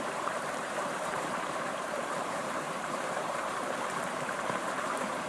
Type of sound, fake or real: fake